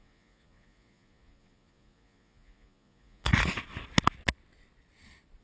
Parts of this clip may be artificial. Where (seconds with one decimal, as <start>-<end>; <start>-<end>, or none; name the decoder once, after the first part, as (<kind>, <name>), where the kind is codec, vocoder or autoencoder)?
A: 0.0-3.3 (vocoder, Vocos)